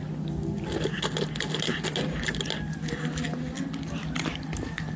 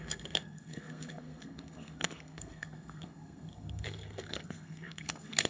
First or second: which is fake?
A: second